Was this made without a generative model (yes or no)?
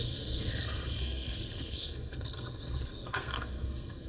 no